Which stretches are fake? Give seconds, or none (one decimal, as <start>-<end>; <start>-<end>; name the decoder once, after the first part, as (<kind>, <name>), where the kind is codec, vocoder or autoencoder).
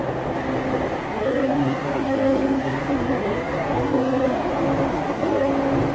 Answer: 1.0-4.5 (codec, SNAC); 4.9-5.5